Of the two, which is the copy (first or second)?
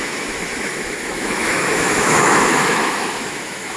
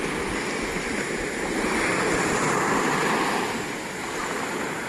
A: first